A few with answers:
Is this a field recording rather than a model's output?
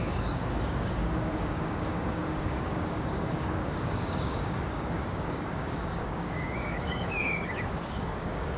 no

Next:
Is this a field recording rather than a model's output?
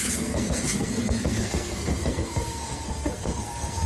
no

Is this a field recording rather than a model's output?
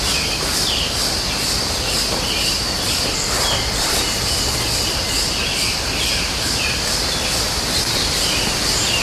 yes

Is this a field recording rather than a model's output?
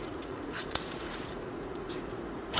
no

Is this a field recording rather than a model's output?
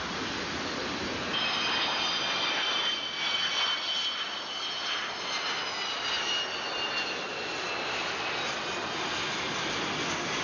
yes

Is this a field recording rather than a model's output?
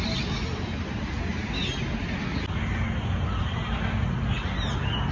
yes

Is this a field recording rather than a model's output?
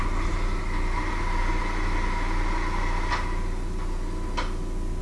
yes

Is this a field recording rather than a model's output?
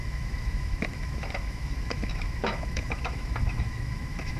no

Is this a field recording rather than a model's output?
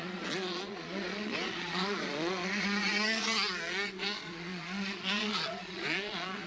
no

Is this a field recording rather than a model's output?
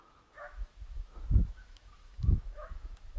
no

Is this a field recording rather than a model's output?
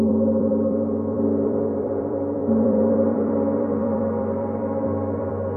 no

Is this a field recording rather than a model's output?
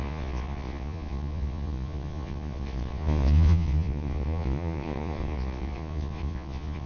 no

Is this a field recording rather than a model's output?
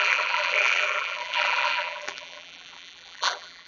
no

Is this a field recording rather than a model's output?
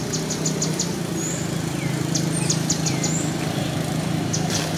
yes